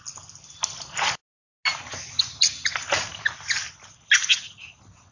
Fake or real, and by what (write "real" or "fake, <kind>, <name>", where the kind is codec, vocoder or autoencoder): real